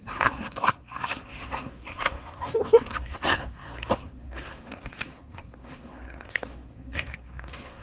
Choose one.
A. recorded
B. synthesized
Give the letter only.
B